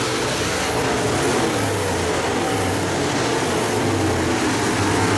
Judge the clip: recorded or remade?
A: recorded